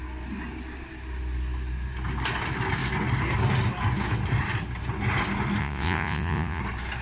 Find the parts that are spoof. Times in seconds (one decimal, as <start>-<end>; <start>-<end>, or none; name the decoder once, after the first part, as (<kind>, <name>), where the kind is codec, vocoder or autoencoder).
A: 5.6-6.6 (vocoder, Vocos)